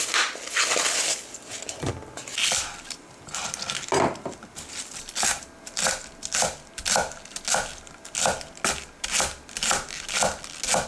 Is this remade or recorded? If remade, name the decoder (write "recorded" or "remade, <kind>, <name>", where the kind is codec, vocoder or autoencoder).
recorded